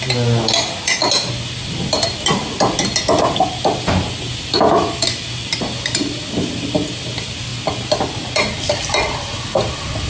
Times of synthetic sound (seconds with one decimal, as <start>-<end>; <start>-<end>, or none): none